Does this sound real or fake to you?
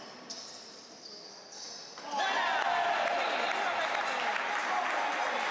real